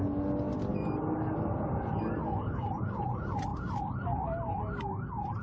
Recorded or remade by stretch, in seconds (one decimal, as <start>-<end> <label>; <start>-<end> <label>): 0.0-0.7 recorded; 0.7-2.0 remade; 2.0-5.4 recorded